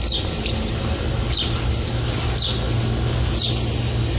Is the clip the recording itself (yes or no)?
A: yes